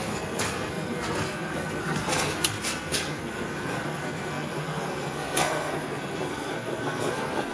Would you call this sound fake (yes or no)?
yes